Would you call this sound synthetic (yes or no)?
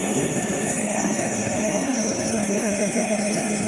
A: yes